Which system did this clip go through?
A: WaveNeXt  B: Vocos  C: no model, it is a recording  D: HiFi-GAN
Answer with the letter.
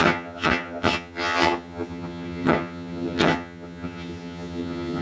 D